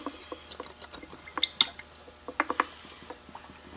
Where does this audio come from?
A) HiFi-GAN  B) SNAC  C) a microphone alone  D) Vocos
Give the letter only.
C